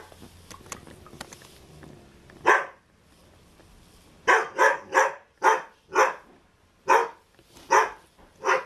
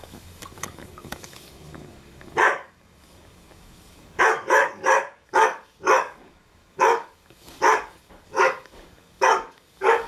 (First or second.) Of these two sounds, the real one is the first